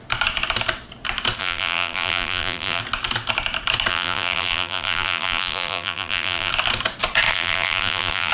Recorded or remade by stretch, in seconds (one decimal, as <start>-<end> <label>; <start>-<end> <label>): 0.0-1.4 recorded; 1.4-2.8 remade; 2.8-3.9 recorded; 3.9-6.5 remade; 6.5-7.3 recorded; 7.3-8.3 remade